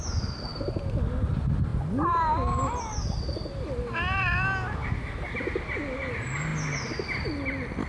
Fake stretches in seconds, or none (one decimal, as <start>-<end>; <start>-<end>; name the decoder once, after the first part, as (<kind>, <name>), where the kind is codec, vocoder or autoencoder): none